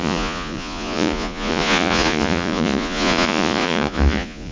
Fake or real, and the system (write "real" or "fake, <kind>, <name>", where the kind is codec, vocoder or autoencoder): fake, vocoder, Vocos